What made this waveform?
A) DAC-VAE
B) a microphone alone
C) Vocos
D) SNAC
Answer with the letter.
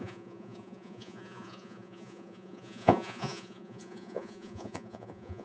C